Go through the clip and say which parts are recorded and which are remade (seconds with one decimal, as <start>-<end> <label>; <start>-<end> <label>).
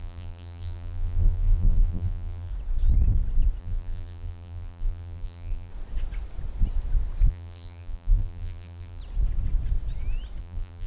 0.0-2.5 remade; 2.5-3.6 recorded; 3.6-5.7 remade; 5.7-7.3 recorded; 7.3-9.0 remade; 9.0-10.4 recorded; 10.4-10.9 remade